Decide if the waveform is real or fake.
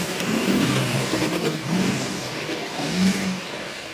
fake